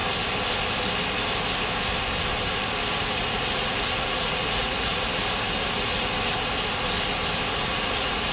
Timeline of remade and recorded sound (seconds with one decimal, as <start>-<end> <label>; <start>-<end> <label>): 0.0-3.3 recorded; 3.3-4.9 remade; 4.9-7.5 recorded; 7.5-8.3 remade